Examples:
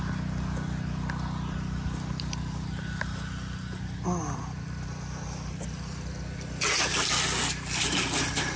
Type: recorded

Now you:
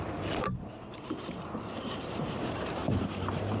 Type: remade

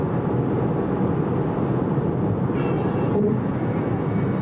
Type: recorded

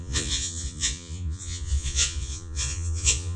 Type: remade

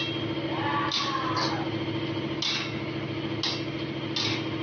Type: recorded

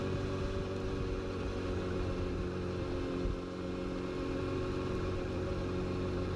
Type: recorded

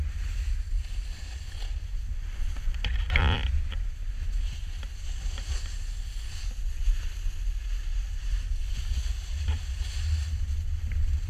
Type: recorded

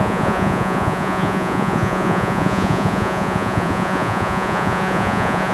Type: remade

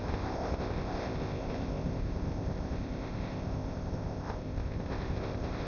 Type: remade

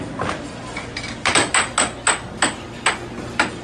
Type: recorded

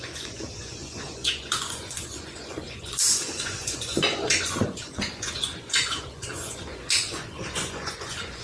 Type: remade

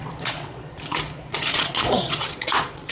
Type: remade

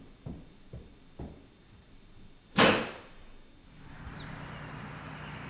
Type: recorded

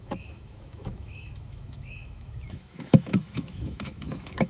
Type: remade